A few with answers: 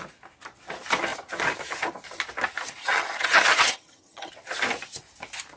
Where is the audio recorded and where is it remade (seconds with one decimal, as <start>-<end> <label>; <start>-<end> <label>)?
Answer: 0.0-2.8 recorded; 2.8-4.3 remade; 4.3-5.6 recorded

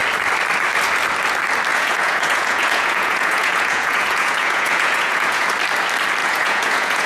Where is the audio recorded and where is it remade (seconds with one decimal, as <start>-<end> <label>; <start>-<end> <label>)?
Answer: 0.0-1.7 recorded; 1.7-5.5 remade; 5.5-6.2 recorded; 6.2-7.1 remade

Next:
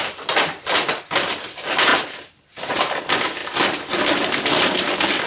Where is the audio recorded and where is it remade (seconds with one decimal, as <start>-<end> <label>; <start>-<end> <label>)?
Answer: 0.0-3.4 remade; 3.4-4.8 recorded; 4.8-5.3 remade

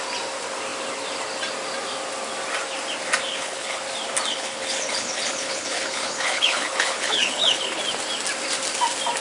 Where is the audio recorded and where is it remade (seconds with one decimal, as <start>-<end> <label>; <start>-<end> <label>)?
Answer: 0.0-3.3 recorded; 3.3-3.8 remade; 3.8-4.3 recorded; 4.3-7.8 remade; 7.8-9.2 recorded

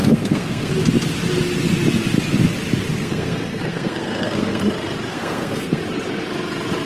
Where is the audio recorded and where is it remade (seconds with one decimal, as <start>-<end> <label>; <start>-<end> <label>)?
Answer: 0.0-0.7 remade; 0.7-3.0 recorded; 3.0-4.6 remade; 4.6-5.1 recorded; 5.1-5.8 remade; 5.8-6.9 recorded

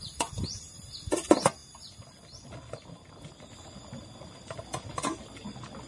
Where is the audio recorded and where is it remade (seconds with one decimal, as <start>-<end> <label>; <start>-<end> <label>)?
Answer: 0.0-5.9 recorded